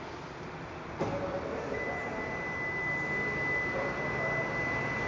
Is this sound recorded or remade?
recorded